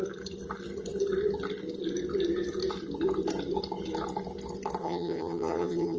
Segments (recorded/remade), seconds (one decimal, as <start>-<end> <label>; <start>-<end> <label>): 0.0-4.8 recorded; 4.8-6.0 remade